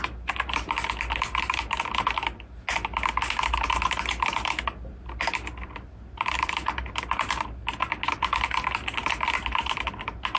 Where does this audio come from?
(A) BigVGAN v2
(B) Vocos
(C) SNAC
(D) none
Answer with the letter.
D